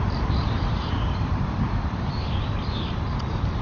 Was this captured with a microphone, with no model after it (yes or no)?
no